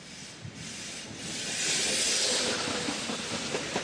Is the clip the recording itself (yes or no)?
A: yes